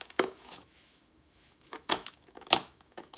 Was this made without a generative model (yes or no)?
no